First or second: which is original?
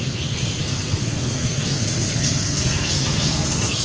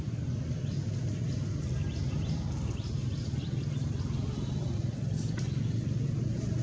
second